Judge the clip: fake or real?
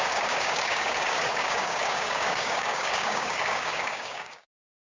fake